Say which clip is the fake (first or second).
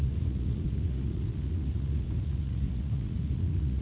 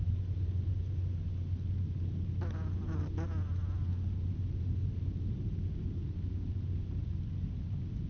first